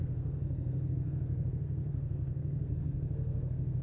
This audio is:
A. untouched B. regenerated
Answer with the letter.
B